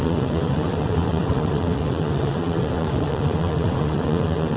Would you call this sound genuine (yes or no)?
no